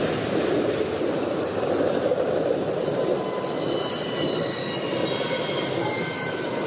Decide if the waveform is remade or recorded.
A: recorded